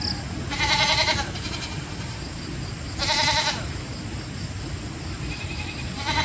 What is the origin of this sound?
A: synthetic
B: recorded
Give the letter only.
B